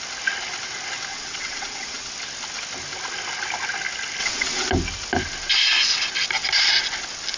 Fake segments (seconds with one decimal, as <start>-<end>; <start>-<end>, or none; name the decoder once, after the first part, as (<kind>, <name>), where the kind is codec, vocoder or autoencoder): 1.1-2.1 (vocoder, WaveNeXt); 4.2-4.7